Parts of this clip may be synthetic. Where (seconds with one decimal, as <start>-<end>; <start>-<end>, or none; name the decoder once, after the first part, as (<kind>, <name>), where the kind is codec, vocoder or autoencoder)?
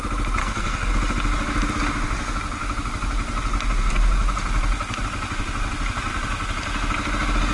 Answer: 0.4-0.9 (codec, SNAC)